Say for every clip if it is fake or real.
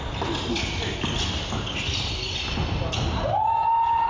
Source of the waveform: real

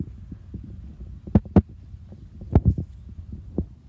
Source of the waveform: real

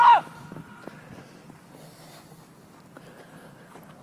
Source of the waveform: real